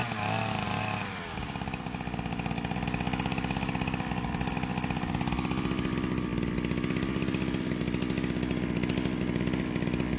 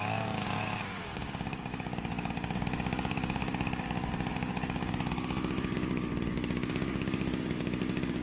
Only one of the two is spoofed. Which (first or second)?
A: second